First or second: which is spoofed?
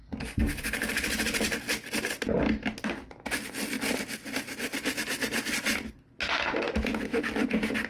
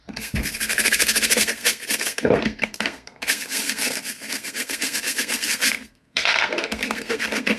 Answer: second